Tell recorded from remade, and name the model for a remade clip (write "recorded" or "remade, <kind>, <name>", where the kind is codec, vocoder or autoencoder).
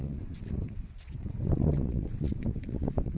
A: remade, vocoder, WaveNeXt